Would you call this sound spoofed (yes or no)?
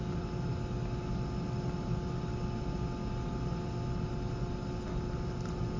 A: no